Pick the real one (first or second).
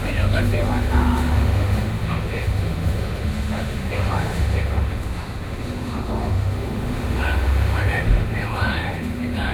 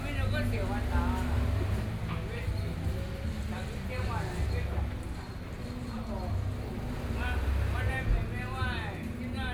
second